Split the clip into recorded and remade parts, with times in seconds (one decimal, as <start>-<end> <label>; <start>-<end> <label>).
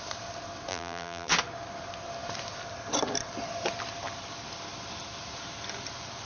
0.0-0.7 recorded; 0.7-1.3 remade; 1.3-6.3 recorded